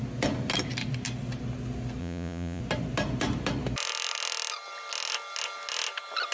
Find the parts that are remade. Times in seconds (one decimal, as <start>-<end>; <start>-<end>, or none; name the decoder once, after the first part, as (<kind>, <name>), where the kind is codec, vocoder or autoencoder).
2.0-2.6 (vocoder, Vocos)